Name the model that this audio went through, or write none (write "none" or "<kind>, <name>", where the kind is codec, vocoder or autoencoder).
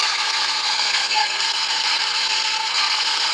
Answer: codec, SNAC